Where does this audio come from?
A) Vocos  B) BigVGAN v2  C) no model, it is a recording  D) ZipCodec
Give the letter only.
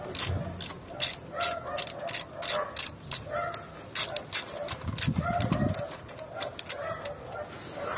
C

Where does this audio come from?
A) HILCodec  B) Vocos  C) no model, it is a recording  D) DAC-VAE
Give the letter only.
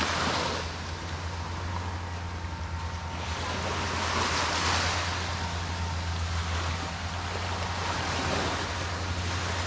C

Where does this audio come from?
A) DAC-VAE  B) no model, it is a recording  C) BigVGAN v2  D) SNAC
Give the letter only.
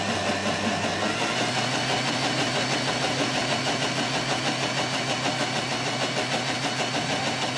B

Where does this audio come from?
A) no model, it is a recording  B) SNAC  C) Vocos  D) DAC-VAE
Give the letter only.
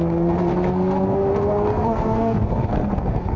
B